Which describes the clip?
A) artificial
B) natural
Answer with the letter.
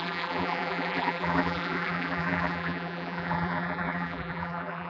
A